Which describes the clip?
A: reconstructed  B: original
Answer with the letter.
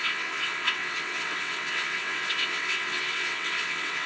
A